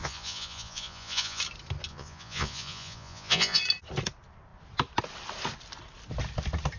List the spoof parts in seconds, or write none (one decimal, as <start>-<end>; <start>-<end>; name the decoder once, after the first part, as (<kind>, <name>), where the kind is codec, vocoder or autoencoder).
0.0-1.4 (vocoder, Vocos); 1.9-3.6

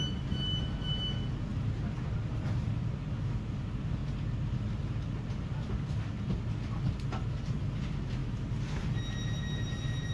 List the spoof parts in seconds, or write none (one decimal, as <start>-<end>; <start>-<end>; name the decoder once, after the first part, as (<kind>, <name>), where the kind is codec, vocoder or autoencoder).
none

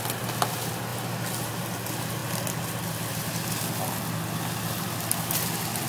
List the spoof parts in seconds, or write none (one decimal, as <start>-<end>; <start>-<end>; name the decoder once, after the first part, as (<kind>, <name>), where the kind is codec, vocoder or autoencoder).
0.9-1.5 (vocoder, BigVGAN v2)

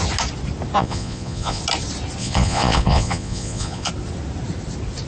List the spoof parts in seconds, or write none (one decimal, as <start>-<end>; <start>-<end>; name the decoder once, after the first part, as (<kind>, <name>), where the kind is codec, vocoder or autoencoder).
0.8-1.6 (vocoder, Vocos); 2.2-3.9

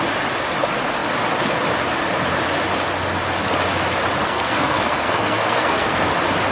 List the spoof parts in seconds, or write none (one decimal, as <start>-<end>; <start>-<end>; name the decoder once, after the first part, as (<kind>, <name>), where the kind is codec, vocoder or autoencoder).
4.2-6.1 (codec, SNAC)

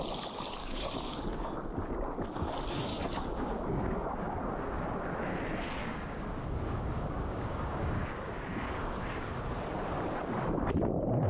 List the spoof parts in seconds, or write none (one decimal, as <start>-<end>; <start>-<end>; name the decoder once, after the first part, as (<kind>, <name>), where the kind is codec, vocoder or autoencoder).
0.6-1.6 (codec, DAC); 2.9-4.4; 5.8-9.3

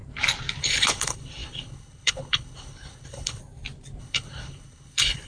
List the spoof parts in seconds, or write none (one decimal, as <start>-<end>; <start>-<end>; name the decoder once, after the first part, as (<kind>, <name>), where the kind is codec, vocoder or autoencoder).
0.6-3.4 (codec, HILCodec); 4.0-5.3